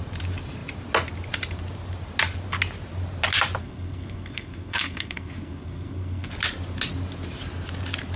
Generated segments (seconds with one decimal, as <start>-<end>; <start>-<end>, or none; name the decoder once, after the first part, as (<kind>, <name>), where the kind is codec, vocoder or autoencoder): 3.6-6.3 (codec, SNAC)